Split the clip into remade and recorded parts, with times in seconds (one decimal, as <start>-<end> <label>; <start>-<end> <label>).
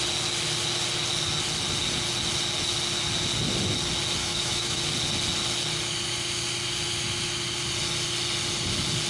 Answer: 0.0-4.2 recorded; 4.2-4.8 remade; 4.8-9.1 recorded